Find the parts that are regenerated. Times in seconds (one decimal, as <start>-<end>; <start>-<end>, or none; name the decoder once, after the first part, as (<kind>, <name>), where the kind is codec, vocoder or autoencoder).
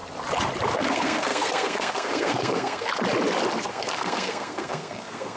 0.7-2.9 (codec, SNAC); 3.7-5.4